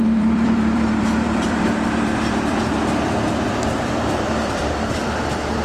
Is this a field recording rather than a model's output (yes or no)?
no